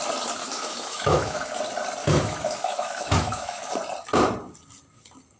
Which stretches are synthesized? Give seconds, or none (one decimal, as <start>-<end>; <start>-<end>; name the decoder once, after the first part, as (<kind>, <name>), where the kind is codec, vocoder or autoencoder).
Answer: 0.4-1.6 (autoencoder, DAC-VAE); 2.0-3.7